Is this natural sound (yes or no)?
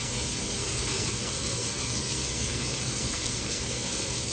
no